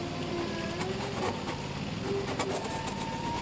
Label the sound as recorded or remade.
recorded